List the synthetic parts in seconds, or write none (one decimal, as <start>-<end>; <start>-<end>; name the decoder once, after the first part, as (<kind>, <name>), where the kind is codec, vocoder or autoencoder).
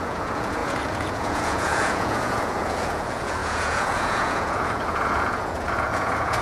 0.0-6.4 (vocoder, Vocos)